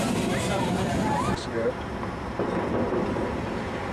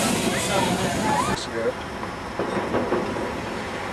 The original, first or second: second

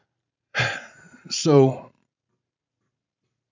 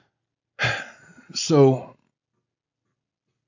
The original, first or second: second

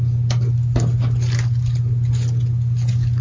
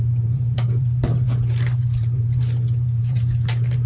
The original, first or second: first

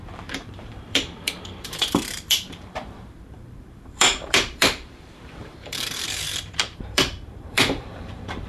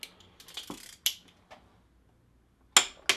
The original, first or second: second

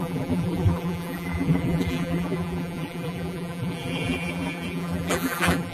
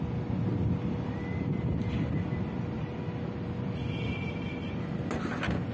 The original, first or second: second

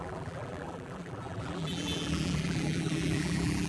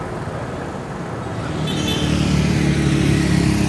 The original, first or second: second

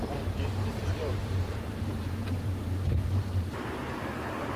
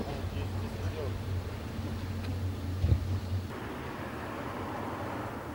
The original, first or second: second